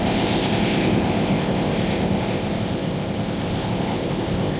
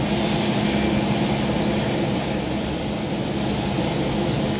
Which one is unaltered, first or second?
second